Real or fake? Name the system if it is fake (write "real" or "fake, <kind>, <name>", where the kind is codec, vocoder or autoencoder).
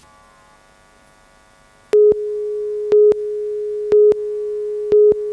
real